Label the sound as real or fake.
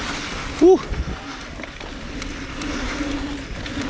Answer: real